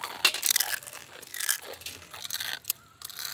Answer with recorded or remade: recorded